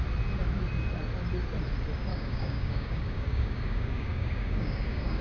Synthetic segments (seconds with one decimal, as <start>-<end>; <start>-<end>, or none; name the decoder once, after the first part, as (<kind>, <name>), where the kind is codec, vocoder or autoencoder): 2.1-5.2 (codec, DAC)